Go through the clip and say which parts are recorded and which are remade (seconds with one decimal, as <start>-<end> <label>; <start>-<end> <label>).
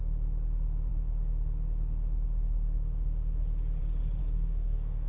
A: 0.0-4.2 recorded; 4.2-5.1 remade